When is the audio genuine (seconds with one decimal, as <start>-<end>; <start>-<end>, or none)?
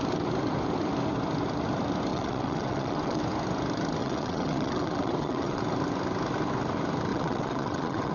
0.0-2.1; 3.2-4.0; 5.6-7.1